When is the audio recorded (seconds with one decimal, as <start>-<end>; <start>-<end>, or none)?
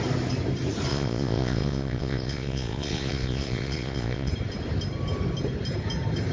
0.0-0.9; 4.3-6.3